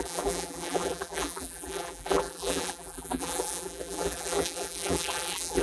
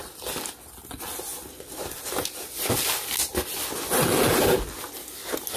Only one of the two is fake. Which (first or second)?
first